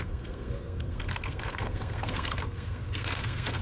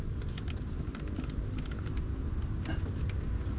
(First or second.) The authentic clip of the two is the second